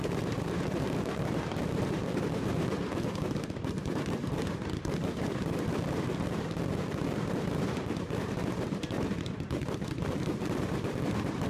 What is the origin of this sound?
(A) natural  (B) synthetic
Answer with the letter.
B